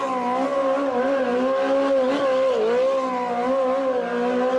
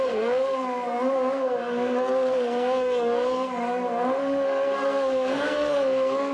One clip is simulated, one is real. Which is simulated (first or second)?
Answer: second